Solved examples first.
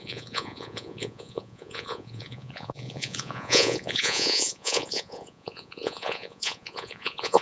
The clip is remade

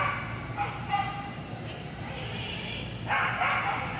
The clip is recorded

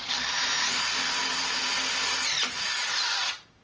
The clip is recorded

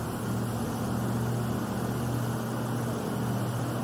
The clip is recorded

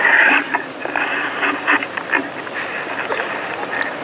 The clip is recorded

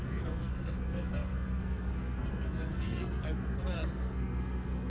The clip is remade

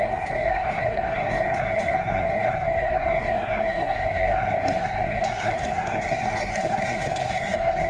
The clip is remade